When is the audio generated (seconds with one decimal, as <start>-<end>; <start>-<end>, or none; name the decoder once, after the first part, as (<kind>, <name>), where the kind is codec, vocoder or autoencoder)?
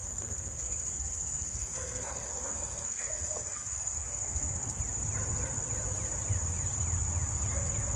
0.0-4.8 (codec, SNAC)